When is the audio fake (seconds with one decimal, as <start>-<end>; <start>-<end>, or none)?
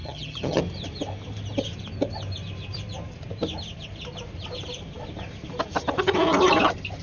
0.0-0.6